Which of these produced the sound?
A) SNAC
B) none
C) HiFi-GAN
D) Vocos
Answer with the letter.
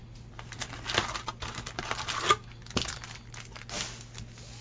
B